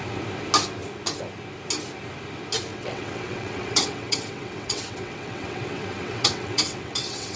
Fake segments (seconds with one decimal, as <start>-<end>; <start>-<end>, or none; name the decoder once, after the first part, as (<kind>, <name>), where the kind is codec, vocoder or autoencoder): 2.7-7.4 (vocoder, WaveNeXt)